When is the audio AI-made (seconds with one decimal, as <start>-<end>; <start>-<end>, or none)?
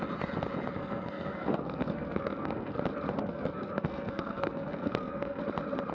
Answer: 0.7-2.8; 3.2-5.4